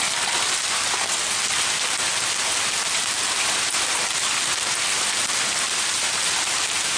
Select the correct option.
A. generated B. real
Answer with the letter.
B